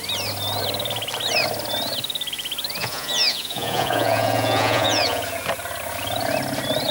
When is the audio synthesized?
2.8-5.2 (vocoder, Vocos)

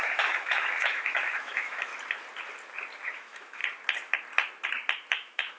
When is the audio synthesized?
0.0-1.9 (autoencoder, DAC-VAE); 3.1-3.6; 5.1-5.6

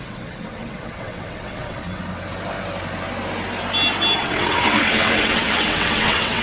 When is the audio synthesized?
0.0-2.0 (vocoder, WaveNeXt); 4.2-6.4